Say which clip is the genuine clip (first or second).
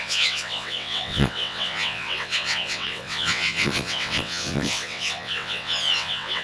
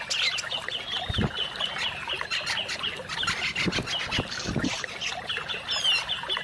second